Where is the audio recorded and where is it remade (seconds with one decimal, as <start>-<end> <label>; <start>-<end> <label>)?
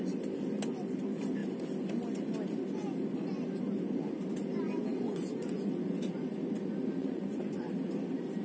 0.0-4.9 recorded; 4.9-6.1 remade; 6.1-7.0 recorded; 7.0-7.7 remade; 7.7-8.4 recorded